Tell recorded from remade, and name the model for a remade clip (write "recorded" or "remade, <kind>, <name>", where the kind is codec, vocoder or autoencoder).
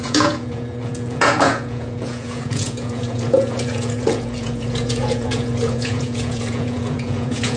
remade, vocoder, Vocos